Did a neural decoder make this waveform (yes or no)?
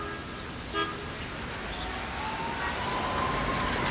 no